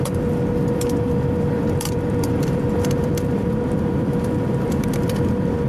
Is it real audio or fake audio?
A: fake